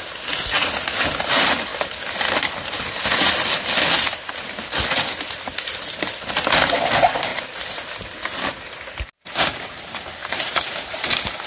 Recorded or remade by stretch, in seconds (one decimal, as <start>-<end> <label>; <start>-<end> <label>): 0.0-10.2 recorded; 10.2-11.1 remade; 11.1-11.5 recorded